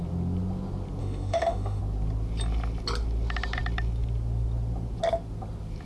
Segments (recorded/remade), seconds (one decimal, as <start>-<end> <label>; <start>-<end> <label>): 0.0-1.0 recorded; 1.0-1.8 remade; 1.8-5.8 recorded